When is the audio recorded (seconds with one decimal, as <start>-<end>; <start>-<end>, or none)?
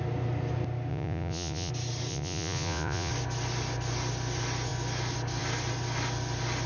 0.0-0.9; 1.7-2.1; 3.1-6.7